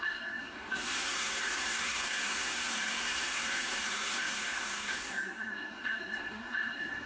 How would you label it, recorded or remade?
remade